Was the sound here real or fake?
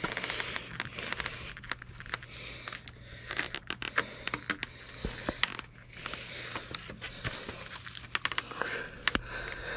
real